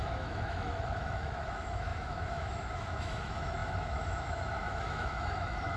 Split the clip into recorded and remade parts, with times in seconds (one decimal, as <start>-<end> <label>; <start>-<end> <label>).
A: 0.0-5.8 remade